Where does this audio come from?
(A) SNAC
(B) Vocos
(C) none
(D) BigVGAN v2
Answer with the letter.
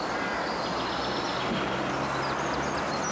C